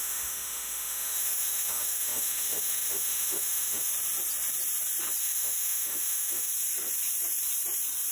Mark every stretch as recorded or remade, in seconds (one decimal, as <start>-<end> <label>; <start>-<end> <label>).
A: 0.0-3.9 remade; 3.9-5.2 recorded; 5.2-6.5 remade; 6.5-8.1 recorded